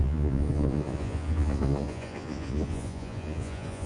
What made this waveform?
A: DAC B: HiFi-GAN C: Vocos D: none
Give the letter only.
C